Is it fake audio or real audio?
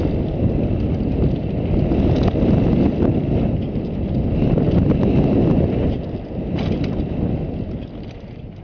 real